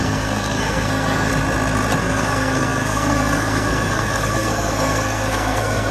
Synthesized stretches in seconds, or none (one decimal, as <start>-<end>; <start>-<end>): 0.0-1.3; 2.0-5.9